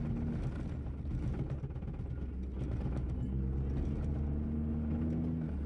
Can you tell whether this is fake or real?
real